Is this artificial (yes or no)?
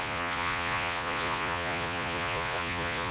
yes